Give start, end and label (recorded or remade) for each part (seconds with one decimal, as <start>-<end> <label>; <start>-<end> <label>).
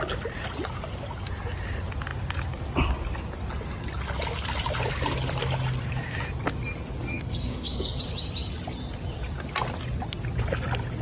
0.0-7.1 recorded; 7.1-8.0 remade; 8.0-11.0 recorded